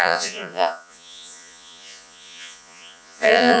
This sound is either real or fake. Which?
fake